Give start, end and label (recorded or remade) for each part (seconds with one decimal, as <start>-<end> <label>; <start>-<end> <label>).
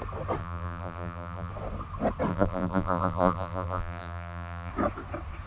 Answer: 0.0-0.4 recorded; 0.4-1.5 remade; 1.5-2.3 recorded; 2.3-4.7 remade; 4.7-5.5 recorded